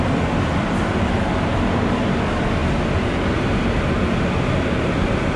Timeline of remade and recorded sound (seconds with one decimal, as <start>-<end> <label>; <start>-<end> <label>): 0.0-2.6 recorded; 2.6-3.8 remade; 3.8-5.4 recorded